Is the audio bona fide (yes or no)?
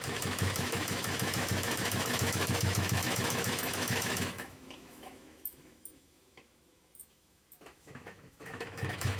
no